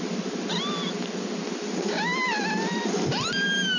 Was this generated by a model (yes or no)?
no